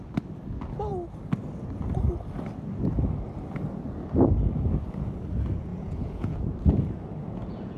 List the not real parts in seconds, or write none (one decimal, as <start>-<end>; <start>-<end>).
5.7-6.4; 7.2-7.8